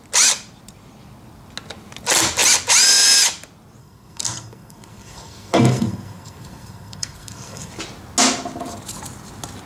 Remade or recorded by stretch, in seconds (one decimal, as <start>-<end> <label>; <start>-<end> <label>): 0.0-3.8 recorded; 3.8-7.7 remade; 7.7-9.7 recorded